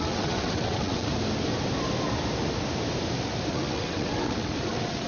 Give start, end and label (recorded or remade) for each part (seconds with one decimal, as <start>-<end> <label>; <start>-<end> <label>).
0.0-1.1 remade; 1.1-3.5 recorded; 3.5-5.1 remade